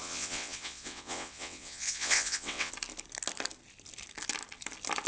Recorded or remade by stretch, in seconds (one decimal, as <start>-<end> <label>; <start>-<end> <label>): 0.0-2.7 remade; 2.7-5.1 recorded